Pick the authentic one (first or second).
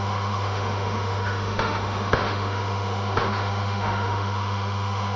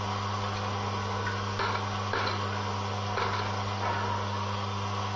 second